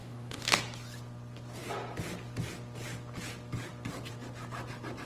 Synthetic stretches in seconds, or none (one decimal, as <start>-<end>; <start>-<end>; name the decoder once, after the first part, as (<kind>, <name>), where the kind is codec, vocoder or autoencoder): 0.0-0.6 (codec, DAC)